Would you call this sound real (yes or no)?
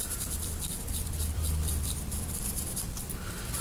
no